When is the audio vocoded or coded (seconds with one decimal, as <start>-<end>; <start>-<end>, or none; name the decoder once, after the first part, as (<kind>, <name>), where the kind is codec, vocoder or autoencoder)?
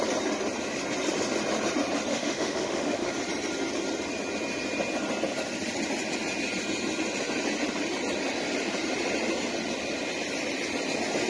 2.1-3.1 (autoencoder, DAC-VAE)